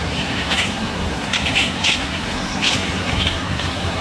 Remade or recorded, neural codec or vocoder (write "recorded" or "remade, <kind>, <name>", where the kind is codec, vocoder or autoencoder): remade, codec, SNAC